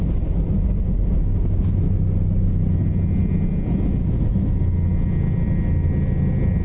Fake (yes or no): no